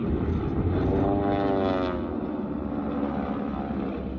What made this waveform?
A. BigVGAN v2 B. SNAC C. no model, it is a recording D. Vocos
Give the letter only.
C